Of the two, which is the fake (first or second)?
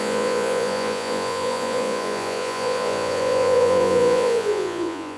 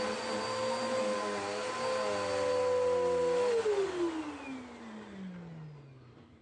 first